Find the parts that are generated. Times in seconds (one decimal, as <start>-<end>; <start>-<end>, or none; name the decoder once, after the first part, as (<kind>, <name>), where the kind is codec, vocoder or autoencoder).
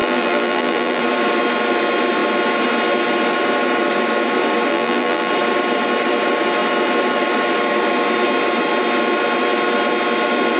0.0-1.0 (vocoder, BigVGAN v2); 4.7-5.3